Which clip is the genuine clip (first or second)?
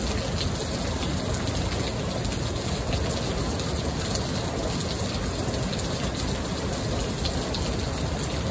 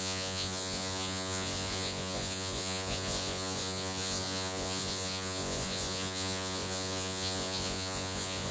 first